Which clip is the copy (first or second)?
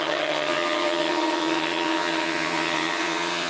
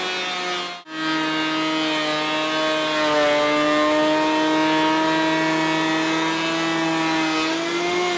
first